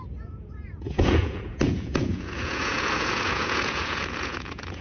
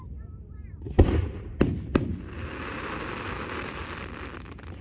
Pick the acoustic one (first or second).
second